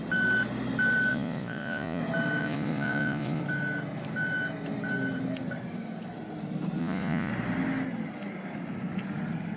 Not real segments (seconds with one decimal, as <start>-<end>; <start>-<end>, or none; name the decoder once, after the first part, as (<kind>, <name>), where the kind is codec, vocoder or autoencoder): 1.1-2.0 (vocoder, Vocos); 2.4-3.4; 6.8-7.3